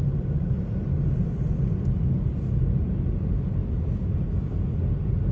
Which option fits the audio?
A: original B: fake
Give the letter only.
A